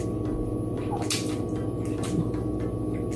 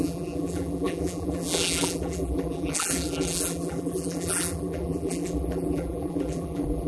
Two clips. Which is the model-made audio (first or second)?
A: second